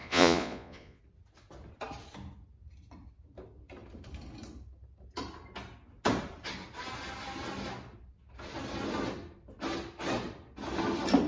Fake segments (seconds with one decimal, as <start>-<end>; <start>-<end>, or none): 0.0-1.0